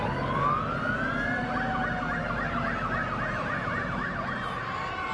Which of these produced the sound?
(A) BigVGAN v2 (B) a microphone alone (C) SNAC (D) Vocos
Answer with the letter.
B